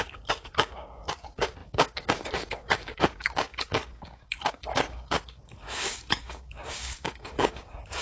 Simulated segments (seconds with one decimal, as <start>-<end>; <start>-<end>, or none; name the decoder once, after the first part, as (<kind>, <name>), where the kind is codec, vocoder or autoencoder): 0.0-8.0 (codec, DAC)